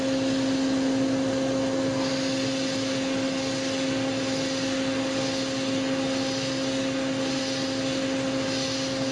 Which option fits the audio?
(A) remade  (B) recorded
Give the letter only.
B